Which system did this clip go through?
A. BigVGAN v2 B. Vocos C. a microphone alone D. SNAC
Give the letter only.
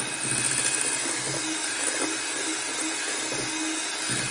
C